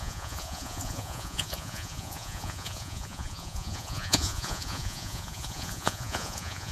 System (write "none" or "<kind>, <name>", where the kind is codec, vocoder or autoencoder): vocoder, Vocos